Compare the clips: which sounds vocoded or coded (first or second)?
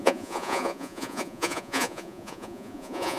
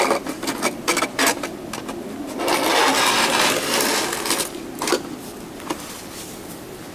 first